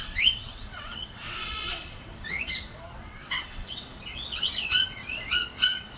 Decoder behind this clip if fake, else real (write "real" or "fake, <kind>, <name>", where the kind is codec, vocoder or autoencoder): fake, vocoder, WaveNeXt